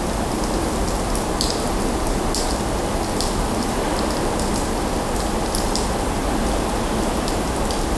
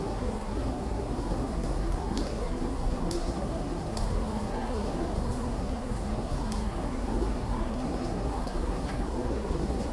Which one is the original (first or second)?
first